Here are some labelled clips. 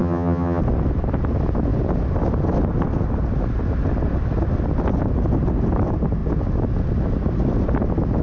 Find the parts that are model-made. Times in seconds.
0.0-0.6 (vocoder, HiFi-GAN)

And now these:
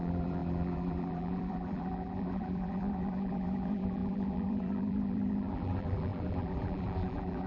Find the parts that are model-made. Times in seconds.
0.0-7.5 (vocoder, BigVGAN v2)

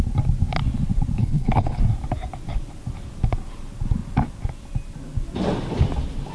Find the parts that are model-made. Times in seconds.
1.2-1.8 (codec, HILCodec)

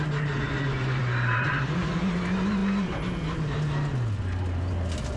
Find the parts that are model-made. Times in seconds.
none